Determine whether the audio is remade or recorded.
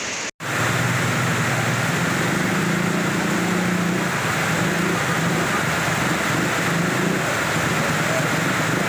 recorded